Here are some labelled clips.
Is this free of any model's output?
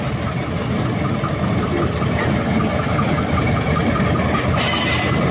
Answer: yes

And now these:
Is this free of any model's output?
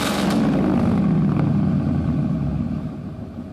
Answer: yes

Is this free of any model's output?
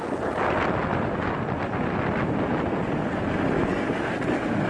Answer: yes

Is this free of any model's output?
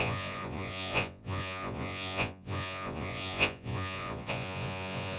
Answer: no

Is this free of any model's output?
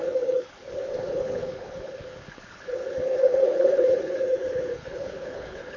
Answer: no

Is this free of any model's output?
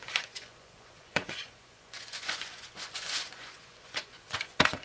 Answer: no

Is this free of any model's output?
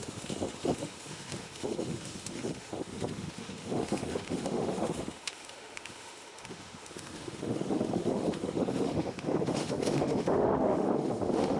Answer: no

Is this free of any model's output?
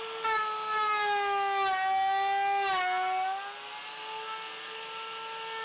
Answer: yes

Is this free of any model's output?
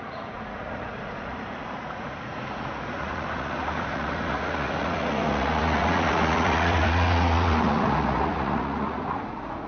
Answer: no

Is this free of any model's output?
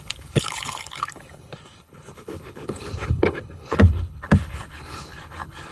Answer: no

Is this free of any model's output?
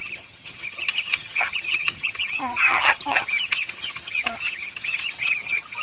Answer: no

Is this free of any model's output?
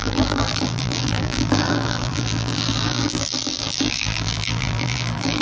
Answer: no